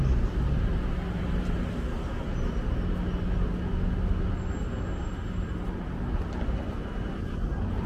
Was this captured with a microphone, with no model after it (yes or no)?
yes